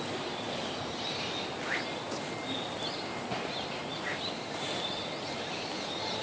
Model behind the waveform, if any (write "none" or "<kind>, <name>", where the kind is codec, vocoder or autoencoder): none